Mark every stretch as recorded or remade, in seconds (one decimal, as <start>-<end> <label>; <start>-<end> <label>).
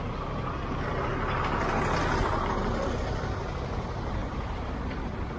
0.0-4.2 recorded; 4.2-4.9 remade; 4.9-5.4 recorded